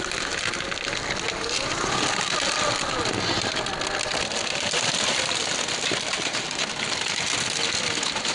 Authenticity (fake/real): real